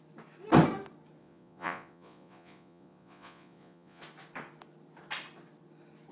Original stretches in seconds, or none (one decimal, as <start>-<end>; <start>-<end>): 0.0-1.2; 4.0-6.1